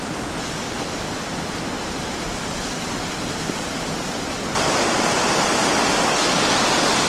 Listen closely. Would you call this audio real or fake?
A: real